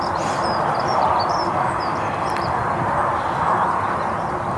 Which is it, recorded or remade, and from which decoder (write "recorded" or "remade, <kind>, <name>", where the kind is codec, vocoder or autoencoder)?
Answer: remade, vocoder, BigVGAN v2